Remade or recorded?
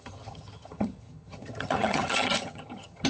remade